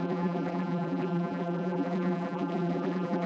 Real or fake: fake